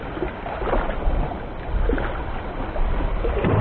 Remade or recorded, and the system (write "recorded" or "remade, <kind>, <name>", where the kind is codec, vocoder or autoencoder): recorded